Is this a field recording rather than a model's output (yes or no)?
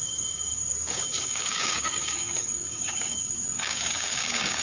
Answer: no